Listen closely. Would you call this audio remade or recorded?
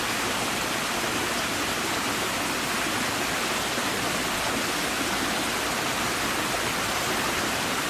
recorded